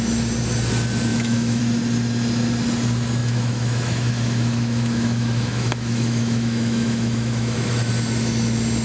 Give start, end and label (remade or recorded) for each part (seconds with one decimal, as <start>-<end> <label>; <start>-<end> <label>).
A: 0.0-1.1 recorded; 1.1-1.6 remade; 1.6-3.2 recorded; 3.2-7.9 remade; 7.9-8.8 recorded